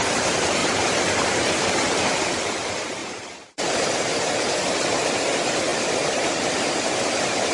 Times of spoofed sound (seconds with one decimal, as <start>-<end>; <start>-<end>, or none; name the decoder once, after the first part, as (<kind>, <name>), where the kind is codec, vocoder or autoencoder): 0.0-7.5 (vocoder, BigVGAN v2)